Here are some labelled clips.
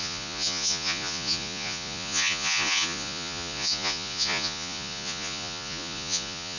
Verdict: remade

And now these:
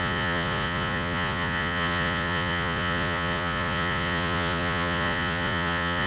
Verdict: remade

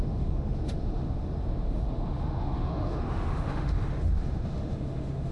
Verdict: remade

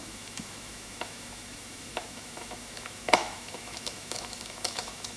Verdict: remade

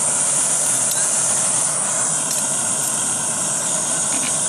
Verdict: recorded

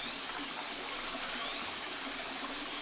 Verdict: recorded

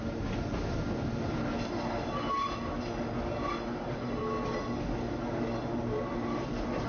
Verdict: recorded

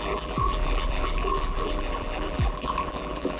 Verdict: remade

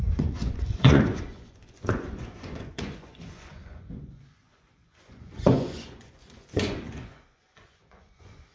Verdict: remade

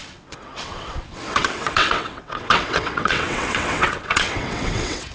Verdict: remade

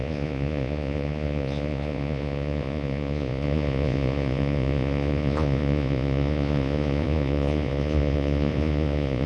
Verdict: remade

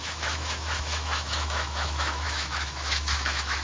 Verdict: remade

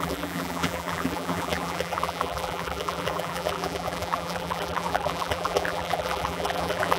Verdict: remade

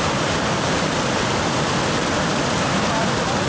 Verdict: recorded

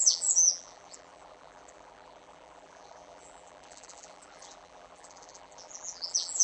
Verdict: remade